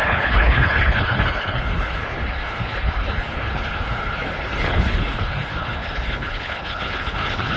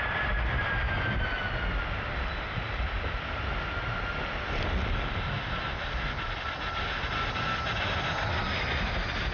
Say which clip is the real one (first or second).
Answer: second